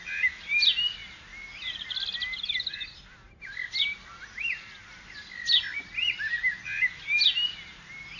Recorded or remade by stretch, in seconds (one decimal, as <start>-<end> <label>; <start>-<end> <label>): 0.0-8.2 recorded